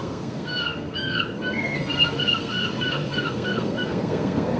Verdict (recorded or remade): remade